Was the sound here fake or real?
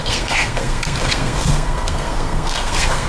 fake